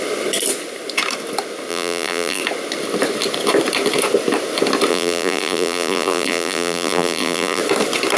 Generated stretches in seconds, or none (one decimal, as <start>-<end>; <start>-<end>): 1.7-2.4; 4.9-7.6